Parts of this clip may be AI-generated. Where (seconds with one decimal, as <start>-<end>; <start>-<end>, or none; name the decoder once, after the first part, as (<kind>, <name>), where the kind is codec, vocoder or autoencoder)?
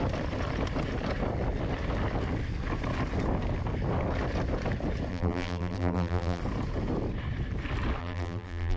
5.1-6.4 (vocoder, BigVGAN v2); 8.0-8.8